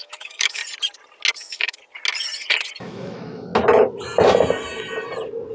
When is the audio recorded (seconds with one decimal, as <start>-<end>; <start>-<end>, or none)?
0.6-1.4; 1.8-2.8; 3.5-5.5